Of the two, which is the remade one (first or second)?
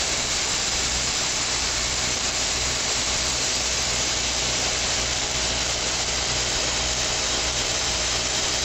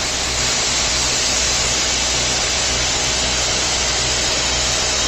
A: first